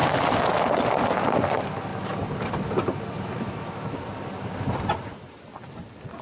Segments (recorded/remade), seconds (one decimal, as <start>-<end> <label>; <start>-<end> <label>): 0.0-6.2 recorded